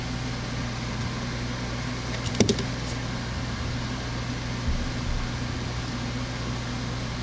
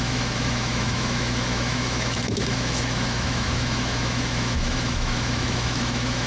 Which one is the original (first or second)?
first